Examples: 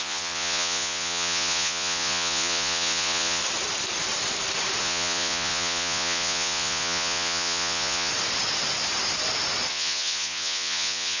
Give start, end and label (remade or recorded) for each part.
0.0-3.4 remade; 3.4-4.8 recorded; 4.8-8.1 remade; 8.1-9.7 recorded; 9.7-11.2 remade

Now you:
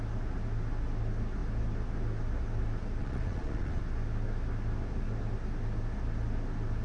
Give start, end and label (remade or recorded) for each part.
0.0-3.0 recorded; 3.0-3.8 remade; 3.8-6.8 recorded

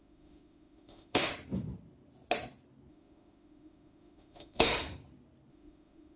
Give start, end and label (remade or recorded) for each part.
0.0-1.3 remade; 1.3-2.9 recorded; 2.9-4.7 remade; 4.7-5.5 recorded; 5.5-6.2 remade

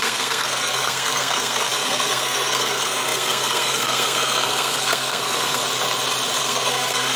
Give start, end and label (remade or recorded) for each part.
0.0-5.6 remade; 5.6-6.4 recorded; 6.4-7.2 remade

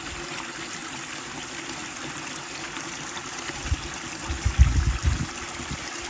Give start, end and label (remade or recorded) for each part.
0.0-6.1 recorded